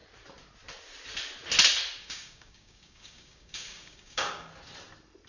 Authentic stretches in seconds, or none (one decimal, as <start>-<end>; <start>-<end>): 0.0-2.0; 4.5-5.3